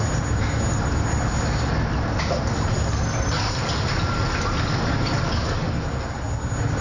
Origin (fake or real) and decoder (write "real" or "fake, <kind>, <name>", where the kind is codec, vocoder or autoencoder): real